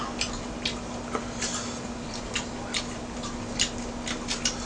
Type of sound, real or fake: real